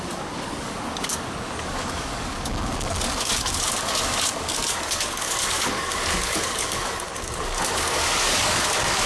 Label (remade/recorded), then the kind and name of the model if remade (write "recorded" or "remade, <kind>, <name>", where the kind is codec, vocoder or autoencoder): remade, codec, DAC